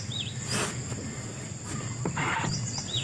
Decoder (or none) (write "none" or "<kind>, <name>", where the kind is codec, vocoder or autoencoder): none